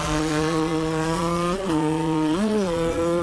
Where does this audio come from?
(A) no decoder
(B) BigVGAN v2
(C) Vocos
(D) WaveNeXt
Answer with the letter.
C